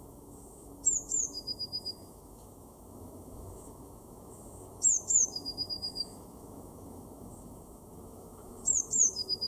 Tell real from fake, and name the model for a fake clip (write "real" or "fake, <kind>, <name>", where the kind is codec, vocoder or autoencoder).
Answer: fake, autoencoder, DAC-VAE